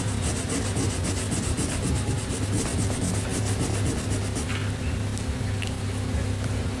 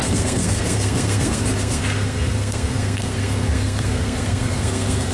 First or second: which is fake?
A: second